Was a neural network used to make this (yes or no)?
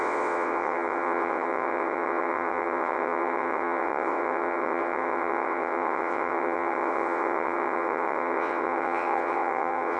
yes